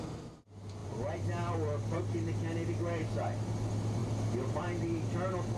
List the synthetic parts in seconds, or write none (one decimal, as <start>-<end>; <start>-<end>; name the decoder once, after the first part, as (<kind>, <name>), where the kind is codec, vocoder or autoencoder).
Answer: none